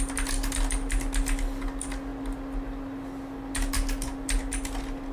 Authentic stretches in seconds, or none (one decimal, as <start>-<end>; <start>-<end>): 0.0-5.1